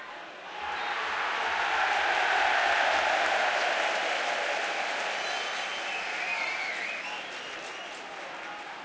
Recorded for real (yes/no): yes